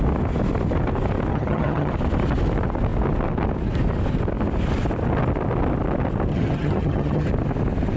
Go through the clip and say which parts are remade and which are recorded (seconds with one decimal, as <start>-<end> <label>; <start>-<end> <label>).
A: 0.0-1.3 recorded; 1.3-1.9 remade; 1.9-6.3 recorded; 6.3-7.3 remade; 7.3-8.0 recorded